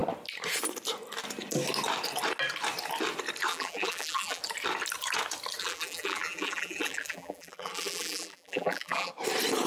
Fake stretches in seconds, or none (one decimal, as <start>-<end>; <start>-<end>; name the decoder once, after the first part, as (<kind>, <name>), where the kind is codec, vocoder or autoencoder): 3.5-4.4 (vocoder, BigVGAN v2); 5.6-9.1